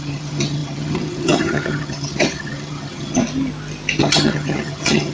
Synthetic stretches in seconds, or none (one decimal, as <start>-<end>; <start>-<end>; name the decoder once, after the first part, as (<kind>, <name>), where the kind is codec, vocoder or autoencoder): 0.0-3.2 (vocoder, HiFi-GAN); 4.0-5.1